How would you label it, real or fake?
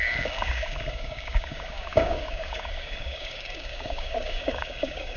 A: fake